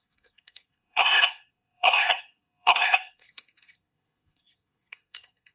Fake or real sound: fake